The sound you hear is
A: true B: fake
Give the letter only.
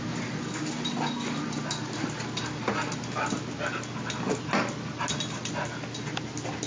A